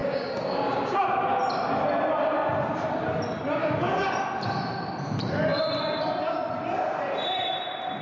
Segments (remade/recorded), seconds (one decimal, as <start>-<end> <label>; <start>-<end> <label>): 0.0-1.0 remade; 1.0-3.6 recorded; 3.6-4.1 remade; 4.1-8.0 recorded